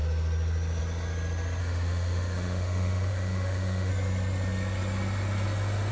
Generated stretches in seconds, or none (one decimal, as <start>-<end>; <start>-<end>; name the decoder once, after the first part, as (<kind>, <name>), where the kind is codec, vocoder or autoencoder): 1.6-3.9 (autoencoder, DAC-VAE)